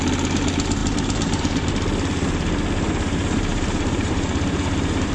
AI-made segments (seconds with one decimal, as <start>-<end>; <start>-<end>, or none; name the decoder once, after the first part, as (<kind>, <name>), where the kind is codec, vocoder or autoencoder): 0.8-1.7 (vocoder, BigVGAN v2); 3.5-5.1